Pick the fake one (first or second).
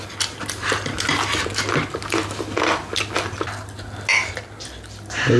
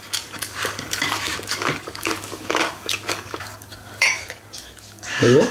second